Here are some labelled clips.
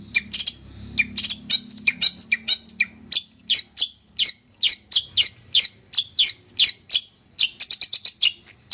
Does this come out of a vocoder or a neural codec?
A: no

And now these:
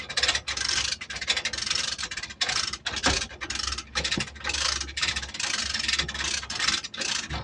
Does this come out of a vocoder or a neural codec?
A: no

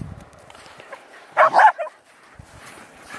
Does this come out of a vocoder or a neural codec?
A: yes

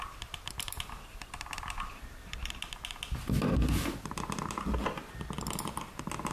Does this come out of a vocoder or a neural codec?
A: no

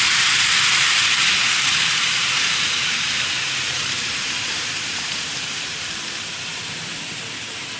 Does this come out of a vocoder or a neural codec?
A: yes